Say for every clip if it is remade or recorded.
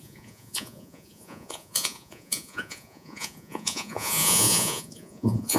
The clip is remade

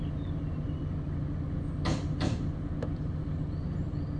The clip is recorded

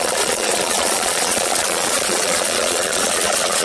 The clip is remade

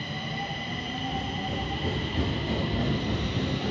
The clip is recorded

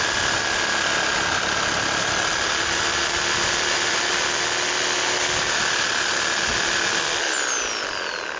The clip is recorded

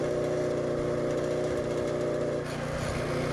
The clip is recorded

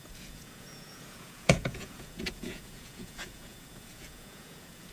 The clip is remade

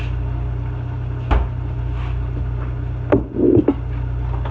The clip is recorded